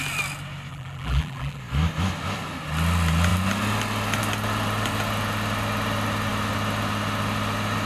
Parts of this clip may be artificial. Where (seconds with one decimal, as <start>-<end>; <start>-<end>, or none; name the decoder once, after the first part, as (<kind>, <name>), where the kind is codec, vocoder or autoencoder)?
0.7-1.6 (vocoder, BigVGAN v2)